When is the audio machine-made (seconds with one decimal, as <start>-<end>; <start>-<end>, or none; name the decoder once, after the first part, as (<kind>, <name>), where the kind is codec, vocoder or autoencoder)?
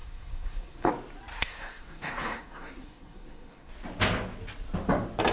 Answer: 0.0-0.9 (codec, SNAC); 1.3-3.7